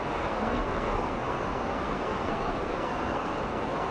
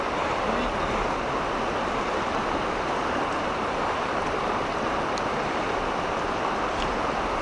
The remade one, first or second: first